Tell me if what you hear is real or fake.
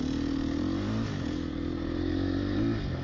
real